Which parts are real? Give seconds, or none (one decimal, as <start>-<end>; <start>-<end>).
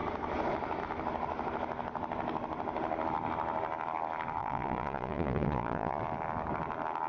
0.0-4.4; 6.0-7.1